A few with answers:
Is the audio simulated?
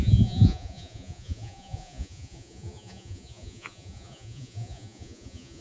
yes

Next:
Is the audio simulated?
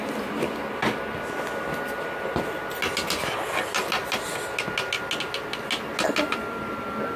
no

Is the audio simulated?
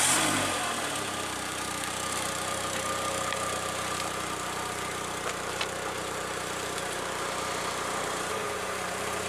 yes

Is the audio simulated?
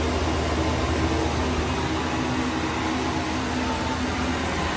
no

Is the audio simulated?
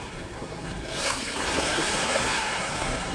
yes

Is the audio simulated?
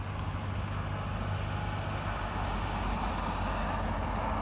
no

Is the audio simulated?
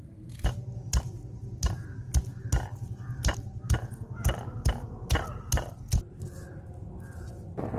no